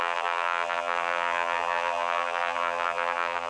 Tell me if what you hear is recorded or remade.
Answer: remade